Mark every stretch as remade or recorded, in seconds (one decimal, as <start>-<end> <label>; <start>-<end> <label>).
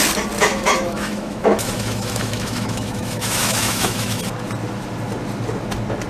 0.0-0.5 recorded; 0.5-4.2 remade; 4.2-6.1 recorded